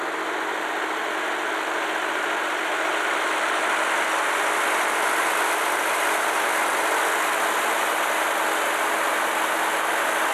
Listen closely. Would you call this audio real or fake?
real